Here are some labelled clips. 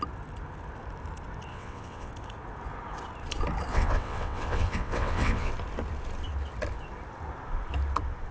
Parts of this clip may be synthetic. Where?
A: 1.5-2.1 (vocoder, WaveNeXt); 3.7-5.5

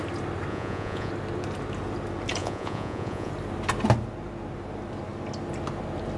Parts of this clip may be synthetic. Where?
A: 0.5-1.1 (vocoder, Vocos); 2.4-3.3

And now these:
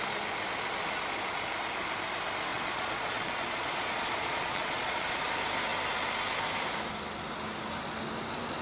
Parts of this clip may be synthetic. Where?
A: 2.5-5.2 (vocoder, Vocos)

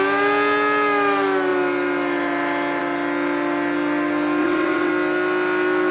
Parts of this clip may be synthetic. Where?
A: 4.4-4.9 (vocoder, WaveNeXt)